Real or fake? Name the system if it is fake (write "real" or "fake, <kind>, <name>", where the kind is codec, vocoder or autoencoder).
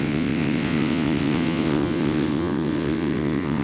fake, vocoder, WaveNeXt